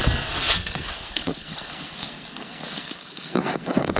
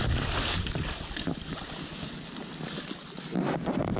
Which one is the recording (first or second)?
second